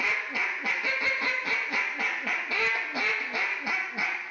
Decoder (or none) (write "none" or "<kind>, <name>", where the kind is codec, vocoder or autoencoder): none